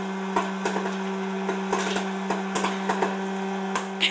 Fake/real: real